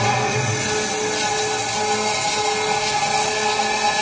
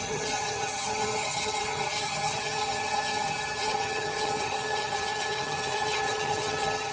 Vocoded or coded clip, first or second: second